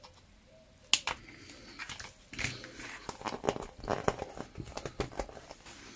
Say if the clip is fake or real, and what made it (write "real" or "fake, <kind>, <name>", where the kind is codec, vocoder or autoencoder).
real